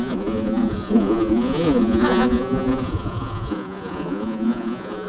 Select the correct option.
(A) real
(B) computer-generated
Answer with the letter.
B